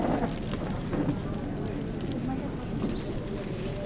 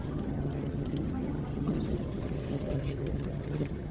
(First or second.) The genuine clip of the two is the first